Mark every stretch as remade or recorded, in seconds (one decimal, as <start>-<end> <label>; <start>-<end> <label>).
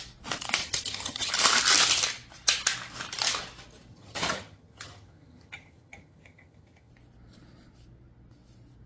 0.0-0.6 recorded; 0.6-1.3 remade; 1.3-3.9 recorded; 3.9-6.9 remade; 6.9-8.9 recorded